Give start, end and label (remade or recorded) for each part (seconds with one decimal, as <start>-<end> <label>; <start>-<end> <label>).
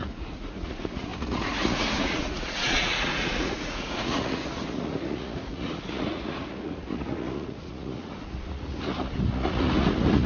0.0-10.3 remade